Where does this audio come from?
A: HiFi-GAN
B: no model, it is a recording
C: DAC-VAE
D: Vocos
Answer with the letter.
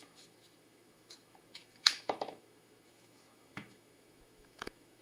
C